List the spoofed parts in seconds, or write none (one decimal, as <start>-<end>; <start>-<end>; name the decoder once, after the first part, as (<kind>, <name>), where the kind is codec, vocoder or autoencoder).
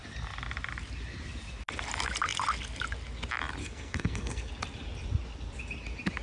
3.6-4.5 (codec, SNAC)